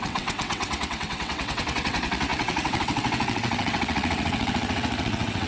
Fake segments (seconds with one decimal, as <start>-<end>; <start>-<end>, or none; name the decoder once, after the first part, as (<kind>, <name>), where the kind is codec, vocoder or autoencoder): 0.0-5.5 (vocoder, WaveNeXt)